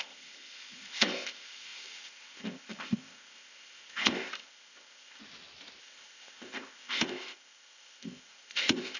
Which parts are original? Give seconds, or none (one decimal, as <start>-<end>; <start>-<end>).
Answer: 5.2-5.8